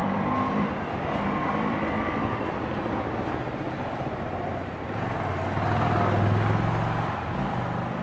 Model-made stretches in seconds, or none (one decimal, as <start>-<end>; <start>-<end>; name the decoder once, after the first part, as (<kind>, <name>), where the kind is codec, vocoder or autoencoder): 0.0-4.8 (vocoder, BigVGAN v2)